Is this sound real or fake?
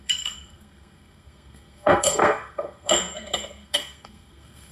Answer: fake